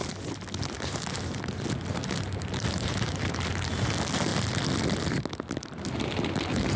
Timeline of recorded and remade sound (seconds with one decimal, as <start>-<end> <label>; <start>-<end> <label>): 0.0-2.0 recorded; 2.0-3.7 remade; 3.7-6.8 recorded